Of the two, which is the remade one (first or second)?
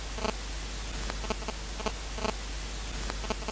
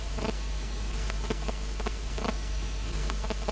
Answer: second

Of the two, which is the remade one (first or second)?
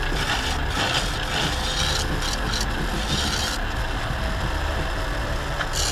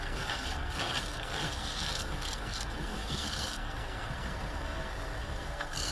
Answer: second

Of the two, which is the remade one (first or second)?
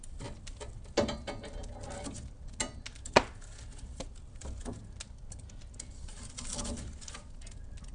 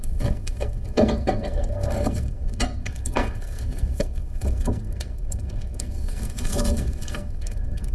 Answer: second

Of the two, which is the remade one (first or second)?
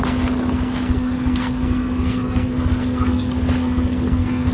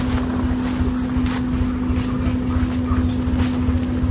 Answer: first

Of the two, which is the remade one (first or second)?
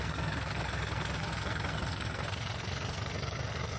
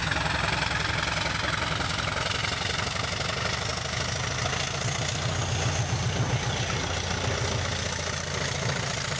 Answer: first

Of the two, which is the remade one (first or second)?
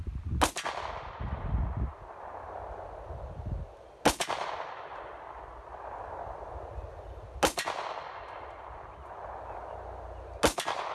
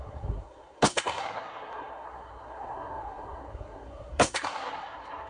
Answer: second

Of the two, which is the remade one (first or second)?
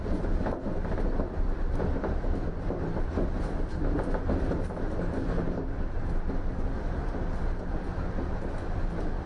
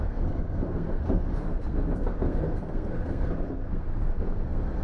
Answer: second